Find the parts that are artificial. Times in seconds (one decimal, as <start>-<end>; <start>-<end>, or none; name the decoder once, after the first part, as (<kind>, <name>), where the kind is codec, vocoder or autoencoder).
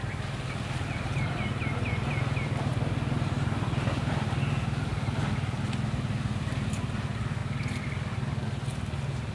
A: none